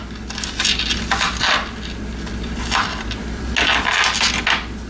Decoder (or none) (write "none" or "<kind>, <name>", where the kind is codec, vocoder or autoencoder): none